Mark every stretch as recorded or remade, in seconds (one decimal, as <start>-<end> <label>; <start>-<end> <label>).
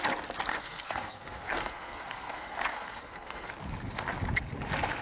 0.0-0.5 recorded; 0.5-3.5 remade; 3.5-5.0 recorded